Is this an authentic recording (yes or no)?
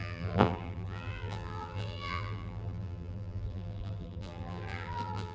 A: no